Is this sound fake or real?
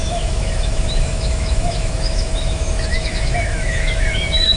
fake